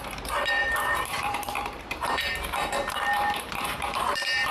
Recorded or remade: remade